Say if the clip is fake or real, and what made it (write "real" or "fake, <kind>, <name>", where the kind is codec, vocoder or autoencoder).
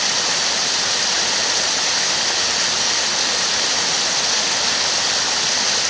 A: real